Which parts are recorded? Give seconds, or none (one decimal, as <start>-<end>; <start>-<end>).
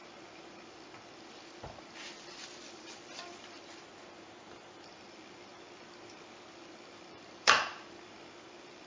5.5-6.9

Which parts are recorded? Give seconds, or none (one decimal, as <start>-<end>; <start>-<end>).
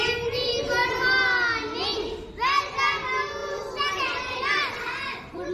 0.0-3.4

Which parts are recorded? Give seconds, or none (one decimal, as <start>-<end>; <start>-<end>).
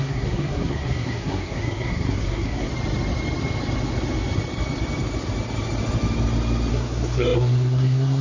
2.7-6.7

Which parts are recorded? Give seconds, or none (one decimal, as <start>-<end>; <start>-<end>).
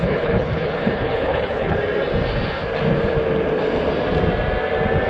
1.8-5.1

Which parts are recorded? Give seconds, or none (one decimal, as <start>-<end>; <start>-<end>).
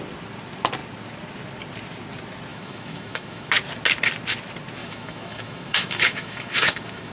0.0-2.5; 3.5-4.8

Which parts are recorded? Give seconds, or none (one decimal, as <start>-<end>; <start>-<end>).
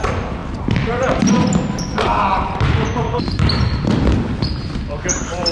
0.0-2.9; 4.3-5.5